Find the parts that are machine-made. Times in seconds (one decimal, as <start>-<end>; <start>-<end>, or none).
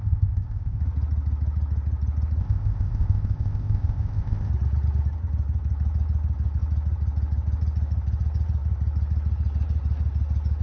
0.0-0.8; 2.4-4.5